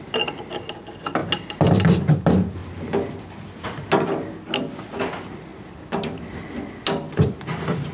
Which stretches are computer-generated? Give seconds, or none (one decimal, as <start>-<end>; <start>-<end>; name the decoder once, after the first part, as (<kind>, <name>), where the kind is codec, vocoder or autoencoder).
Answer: none